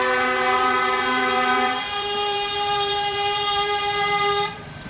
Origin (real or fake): fake